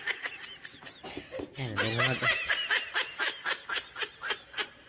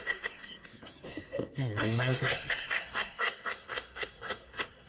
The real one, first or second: first